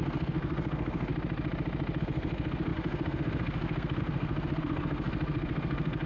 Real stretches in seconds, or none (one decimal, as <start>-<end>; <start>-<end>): 1.1-2.0